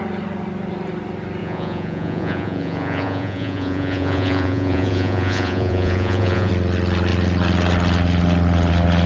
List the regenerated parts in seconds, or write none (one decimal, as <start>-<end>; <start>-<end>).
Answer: 1.4-6.5

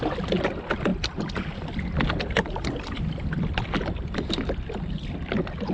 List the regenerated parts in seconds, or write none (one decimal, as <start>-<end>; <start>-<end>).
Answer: none

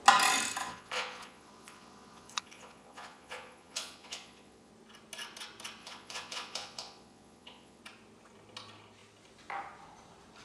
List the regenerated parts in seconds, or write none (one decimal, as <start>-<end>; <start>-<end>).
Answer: 0.6-4.7; 5.8-7.8

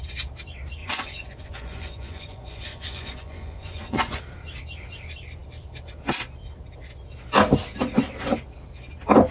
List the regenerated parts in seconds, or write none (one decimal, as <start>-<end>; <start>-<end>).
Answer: 0.8-4.2

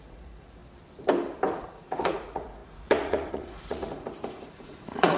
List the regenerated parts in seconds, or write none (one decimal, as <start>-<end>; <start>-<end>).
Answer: 0.0-0.6; 1.5-5.2